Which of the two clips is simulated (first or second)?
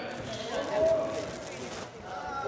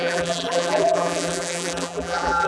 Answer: second